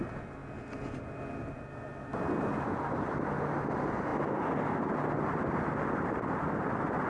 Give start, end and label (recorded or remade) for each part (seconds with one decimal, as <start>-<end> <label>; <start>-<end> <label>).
0.0-7.1 recorded